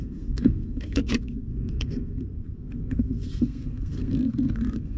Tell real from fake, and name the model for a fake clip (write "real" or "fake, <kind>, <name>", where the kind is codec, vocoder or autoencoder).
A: fake, codec, SNAC